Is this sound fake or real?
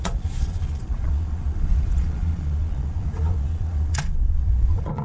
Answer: fake